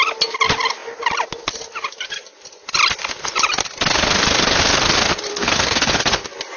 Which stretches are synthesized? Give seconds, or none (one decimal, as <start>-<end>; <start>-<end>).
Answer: 5.3-5.9